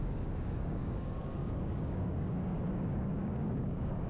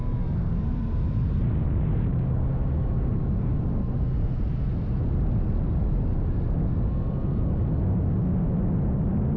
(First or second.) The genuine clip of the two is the second